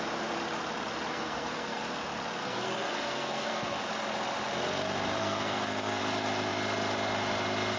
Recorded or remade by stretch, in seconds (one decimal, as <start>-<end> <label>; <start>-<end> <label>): 0.0-1.1 recorded; 1.1-1.8 remade; 1.8-2.4 recorded; 2.4-3.8 remade; 3.8-5.2 recorded; 5.2-6.0 remade; 6.0-7.8 recorded